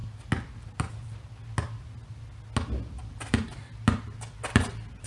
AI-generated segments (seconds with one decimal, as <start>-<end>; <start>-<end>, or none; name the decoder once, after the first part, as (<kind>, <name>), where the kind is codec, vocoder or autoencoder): none